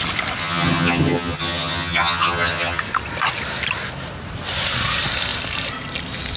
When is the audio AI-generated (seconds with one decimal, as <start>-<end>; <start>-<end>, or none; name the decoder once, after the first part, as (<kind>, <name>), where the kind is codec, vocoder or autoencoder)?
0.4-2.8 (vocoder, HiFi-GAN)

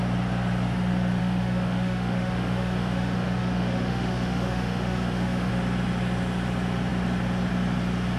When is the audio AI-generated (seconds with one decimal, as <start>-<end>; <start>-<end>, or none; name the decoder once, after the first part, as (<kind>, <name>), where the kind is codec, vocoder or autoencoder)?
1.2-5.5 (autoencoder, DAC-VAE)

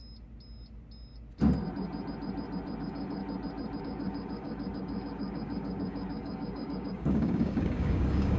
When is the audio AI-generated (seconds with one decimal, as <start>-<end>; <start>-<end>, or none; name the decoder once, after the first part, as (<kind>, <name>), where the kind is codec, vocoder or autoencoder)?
2.8-3.2 (codec, DAC); 3.8-8.4

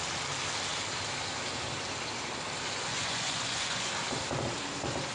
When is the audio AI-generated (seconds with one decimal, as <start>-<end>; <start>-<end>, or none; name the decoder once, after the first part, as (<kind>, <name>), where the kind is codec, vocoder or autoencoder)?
2.9-3.9 (vocoder, Vocos)

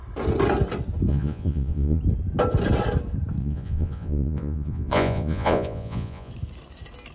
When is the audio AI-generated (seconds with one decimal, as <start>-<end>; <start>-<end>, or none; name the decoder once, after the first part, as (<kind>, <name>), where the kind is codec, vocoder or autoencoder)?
1.1-2.0 (vocoder, Vocos); 3.4-6.3